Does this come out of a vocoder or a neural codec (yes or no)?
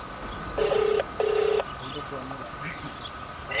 no